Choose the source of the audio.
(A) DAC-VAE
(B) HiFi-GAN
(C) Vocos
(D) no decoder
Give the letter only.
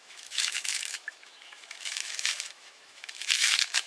A